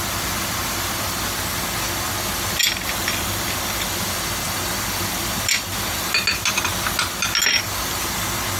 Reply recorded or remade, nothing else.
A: recorded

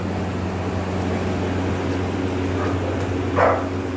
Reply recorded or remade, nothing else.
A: recorded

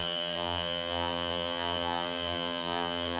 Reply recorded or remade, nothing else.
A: remade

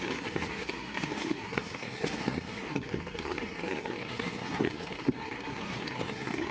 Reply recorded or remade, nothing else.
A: remade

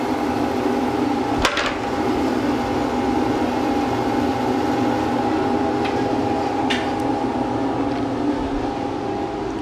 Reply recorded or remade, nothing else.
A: recorded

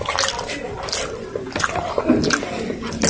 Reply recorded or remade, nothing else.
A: recorded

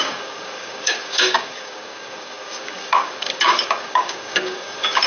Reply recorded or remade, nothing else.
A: remade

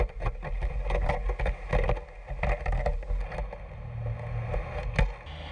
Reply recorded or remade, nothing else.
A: recorded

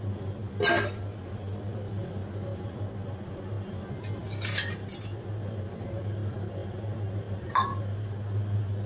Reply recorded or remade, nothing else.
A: recorded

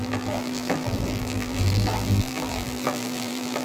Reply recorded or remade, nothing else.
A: remade